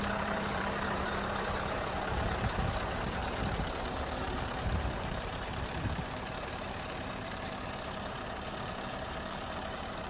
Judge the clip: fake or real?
fake